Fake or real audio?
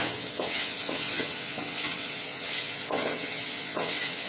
fake